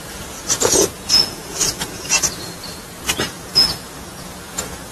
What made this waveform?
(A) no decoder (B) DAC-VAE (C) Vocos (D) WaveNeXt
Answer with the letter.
C